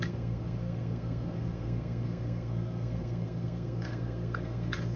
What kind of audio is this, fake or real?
fake